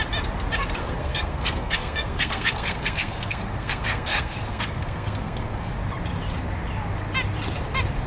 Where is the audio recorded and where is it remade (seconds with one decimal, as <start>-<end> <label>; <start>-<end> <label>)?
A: 0.0-0.8 recorded; 0.8-5.7 remade; 5.7-8.1 recorded